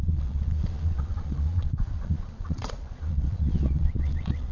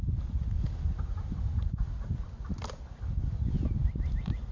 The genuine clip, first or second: second